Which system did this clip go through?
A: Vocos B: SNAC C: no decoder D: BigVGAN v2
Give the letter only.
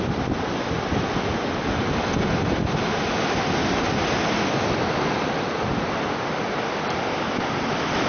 C